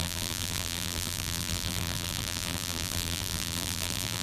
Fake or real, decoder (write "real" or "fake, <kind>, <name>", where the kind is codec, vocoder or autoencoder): fake, vocoder, BigVGAN v2